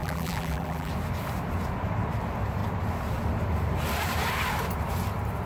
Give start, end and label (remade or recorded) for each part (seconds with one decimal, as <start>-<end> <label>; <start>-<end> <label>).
0.0-0.9 remade; 0.9-5.5 recorded